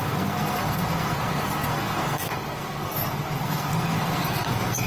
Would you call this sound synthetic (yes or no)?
yes